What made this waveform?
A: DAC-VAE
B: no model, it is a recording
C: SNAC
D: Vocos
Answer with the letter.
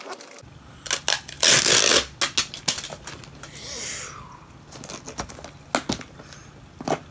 B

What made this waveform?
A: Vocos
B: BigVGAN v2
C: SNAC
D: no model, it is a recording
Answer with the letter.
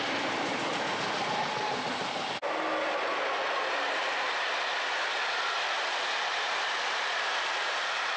D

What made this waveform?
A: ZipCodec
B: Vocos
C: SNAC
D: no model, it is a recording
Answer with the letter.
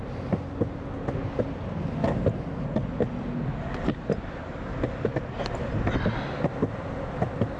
D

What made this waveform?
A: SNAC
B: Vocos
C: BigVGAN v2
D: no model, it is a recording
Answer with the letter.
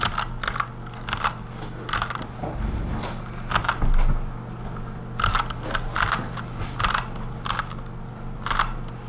D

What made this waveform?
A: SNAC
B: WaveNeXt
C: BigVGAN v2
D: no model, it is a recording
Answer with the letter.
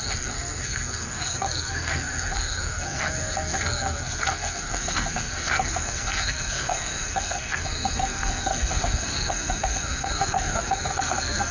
A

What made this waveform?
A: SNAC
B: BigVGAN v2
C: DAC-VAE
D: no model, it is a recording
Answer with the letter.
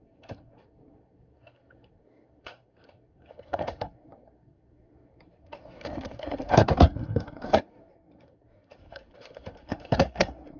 A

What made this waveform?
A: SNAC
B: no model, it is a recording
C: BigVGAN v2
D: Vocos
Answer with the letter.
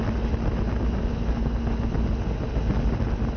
B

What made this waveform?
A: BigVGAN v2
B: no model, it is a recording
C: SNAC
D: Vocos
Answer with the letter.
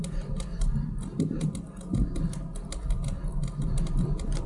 B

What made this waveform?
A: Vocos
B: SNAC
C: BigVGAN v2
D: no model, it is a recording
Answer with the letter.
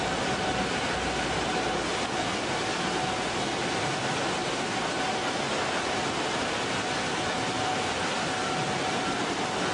D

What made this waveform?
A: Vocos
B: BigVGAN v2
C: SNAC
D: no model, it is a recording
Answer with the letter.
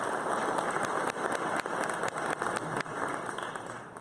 D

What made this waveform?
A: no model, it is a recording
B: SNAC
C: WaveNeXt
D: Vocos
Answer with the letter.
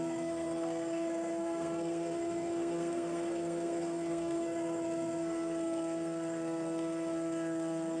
B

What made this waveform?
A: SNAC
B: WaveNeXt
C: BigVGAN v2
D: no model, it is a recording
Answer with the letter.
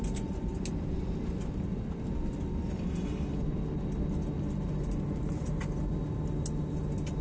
D